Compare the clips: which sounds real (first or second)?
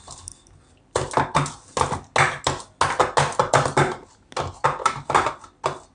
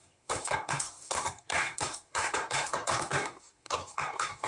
first